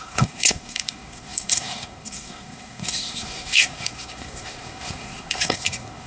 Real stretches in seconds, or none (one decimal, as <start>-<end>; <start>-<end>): none